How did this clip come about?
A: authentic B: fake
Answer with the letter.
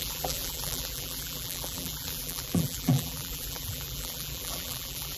B